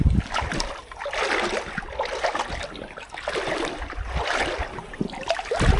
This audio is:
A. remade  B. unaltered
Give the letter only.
B